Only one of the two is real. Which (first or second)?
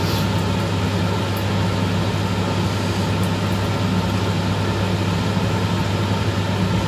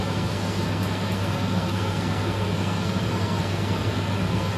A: first